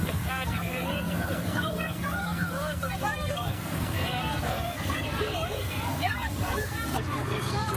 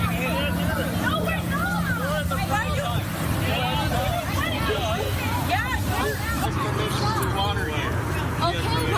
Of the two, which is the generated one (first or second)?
first